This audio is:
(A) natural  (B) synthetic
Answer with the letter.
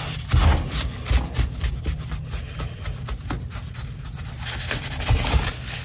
A